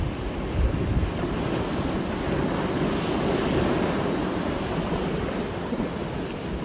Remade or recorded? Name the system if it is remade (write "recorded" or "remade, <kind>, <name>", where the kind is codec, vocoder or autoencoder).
recorded